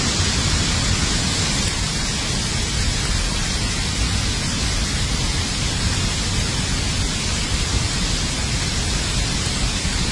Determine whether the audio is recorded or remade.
recorded